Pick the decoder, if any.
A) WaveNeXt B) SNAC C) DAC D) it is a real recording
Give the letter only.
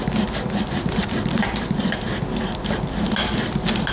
D